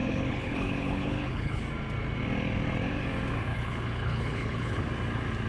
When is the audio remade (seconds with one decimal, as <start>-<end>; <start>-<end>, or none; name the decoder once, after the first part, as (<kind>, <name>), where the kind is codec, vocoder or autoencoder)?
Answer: 0.0-1.6 (codec, HILCodec); 3.5-4.8